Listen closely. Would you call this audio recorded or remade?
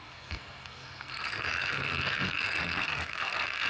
remade